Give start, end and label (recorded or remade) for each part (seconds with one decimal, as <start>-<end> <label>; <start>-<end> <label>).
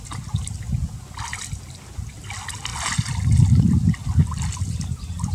0.0-5.3 recorded